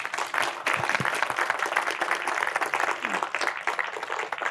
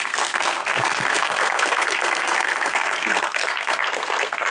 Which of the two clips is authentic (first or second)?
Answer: first